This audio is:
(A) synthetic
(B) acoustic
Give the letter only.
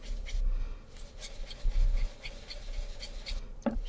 B